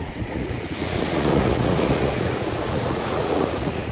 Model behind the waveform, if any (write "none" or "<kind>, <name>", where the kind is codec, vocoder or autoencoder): vocoder, Vocos